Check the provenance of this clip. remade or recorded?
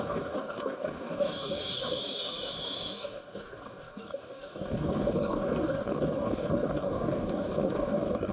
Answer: remade